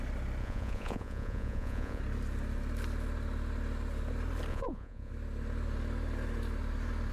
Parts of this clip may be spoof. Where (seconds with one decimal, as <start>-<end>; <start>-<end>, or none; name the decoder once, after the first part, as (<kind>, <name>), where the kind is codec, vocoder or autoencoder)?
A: 0.4-2.0 (vocoder, Vocos); 4.5-5.1